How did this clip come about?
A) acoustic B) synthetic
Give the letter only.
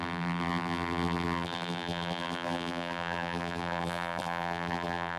B